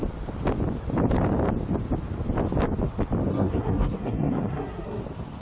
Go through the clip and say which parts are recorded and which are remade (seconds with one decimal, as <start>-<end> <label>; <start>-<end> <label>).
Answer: 0.0-3.3 recorded; 3.3-5.0 remade; 5.0-5.4 recorded